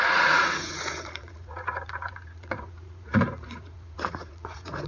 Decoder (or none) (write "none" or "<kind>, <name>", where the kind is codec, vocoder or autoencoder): vocoder, Vocos